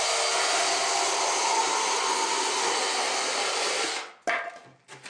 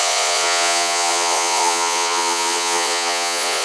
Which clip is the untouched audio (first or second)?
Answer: first